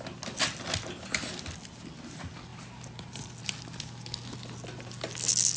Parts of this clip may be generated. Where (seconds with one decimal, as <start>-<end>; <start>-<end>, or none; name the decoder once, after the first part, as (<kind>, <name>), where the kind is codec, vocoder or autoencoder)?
none